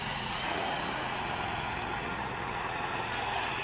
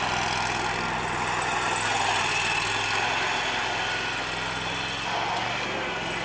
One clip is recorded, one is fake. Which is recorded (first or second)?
second